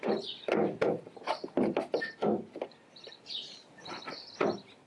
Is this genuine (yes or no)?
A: yes